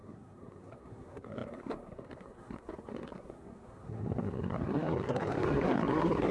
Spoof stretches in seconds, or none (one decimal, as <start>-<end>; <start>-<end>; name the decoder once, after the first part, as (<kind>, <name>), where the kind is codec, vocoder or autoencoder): 0.0-6.3 (codec, SNAC)